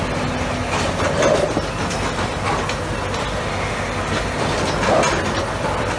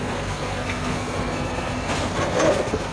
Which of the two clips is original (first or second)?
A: first